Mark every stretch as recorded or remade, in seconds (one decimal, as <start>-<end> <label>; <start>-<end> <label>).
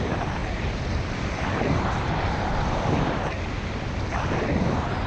0.0-0.4 recorded; 0.4-3.1 remade; 3.1-5.1 recorded